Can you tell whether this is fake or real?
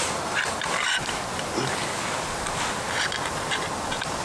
real